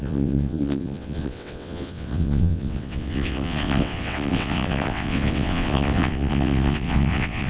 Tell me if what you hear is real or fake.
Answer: fake